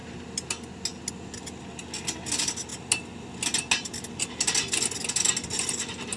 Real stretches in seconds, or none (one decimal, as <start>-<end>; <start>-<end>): 0.0-6.2